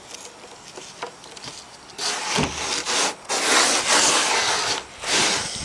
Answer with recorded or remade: recorded